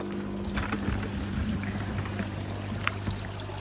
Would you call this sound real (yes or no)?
yes